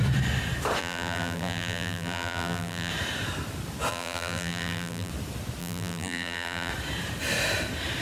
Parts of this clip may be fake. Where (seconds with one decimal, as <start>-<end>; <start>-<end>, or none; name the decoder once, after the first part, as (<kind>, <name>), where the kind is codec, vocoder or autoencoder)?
0.8-2.9 (vocoder, BigVGAN v2); 3.9-5.1; 5.6-6.7

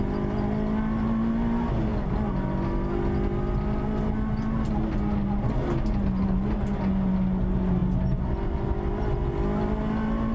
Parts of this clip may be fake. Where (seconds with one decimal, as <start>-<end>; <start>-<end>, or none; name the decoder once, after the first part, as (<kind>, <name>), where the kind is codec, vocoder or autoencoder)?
none

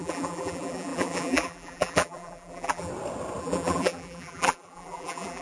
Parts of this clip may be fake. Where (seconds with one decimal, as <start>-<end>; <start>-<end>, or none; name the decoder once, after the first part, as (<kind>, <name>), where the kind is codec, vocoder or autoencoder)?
0.0-2.9 (vocoder, BigVGAN v2); 3.4-5.4

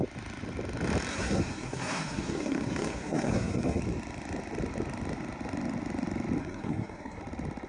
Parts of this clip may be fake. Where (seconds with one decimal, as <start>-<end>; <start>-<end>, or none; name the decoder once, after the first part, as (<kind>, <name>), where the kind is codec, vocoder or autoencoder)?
1.1-3.8 (codec, SNAC); 6.4-7.2

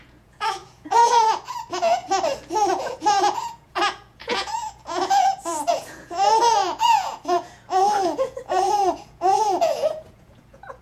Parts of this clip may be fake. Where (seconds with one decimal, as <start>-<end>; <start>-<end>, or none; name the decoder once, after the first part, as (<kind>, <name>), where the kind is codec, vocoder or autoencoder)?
0.0-2.0 (vocoder, Vocos); 2.7-10.8

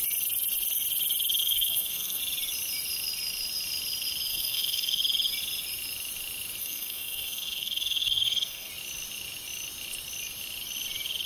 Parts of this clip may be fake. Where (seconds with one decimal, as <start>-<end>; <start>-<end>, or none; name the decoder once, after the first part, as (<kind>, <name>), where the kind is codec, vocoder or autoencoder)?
1.4-2.2 (codec, SNAC); 4.3-5.0; 6.6-8.7

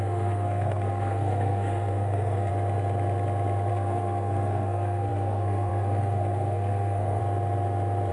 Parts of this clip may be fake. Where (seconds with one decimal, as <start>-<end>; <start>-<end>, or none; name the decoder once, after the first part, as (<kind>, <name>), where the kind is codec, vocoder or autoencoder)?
0.0-2.5 (codec, SNAC); 3.7-7.2

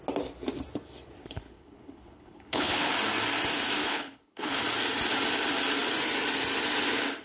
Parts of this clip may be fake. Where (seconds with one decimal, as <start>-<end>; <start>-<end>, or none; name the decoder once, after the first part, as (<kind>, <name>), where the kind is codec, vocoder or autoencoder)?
1.2-2.9 (codec, HILCodec); 3.8-4.6